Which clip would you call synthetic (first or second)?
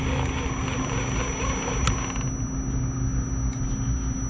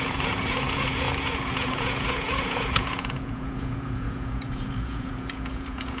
second